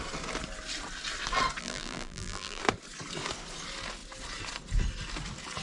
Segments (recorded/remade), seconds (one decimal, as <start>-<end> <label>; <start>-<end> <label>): 0.0-1.6 recorded; 1.6-2.6 remade; 2.6-5.6 recorded